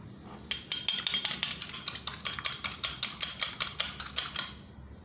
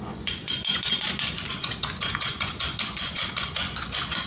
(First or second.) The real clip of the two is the first